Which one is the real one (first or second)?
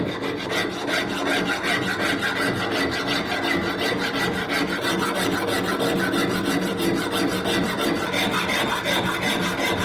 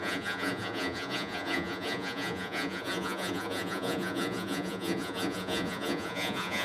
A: first